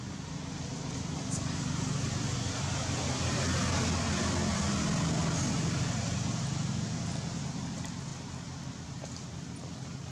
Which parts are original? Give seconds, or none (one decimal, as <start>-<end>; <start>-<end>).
0.0-10.1